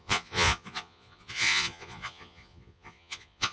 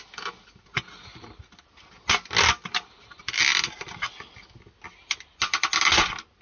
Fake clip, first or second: first